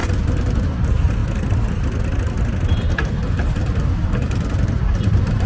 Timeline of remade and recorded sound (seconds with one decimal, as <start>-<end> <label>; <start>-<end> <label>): 0.0-0.6 remade; 0.6-3.6 recorded; 3.6-5.5 remade

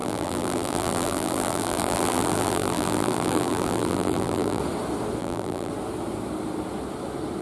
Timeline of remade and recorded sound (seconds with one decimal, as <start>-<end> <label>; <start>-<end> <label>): 0.0-4.6 remade; 4.6-5.2 recorded; 5.2-5.7 remade; 5.7-7.4 recorded

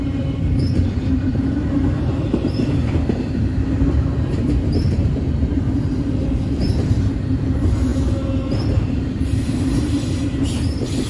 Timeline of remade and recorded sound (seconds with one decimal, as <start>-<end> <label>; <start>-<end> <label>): 0.0-11.1 remade

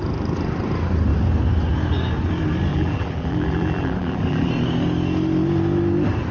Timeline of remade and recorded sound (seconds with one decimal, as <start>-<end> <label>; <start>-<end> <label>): 0.0-2.7 recorded; 2.7-4.5 remade; 4.5-6.3 recorded